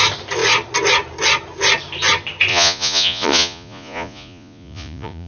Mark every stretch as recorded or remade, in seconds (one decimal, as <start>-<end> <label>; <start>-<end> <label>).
0.0-2.5 recorded; 2.5-5.3 remade